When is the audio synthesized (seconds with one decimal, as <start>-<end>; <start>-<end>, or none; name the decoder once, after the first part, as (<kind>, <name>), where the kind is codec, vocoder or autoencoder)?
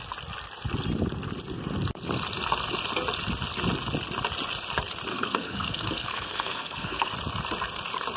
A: 5.1-7.1 (codec, SNAC)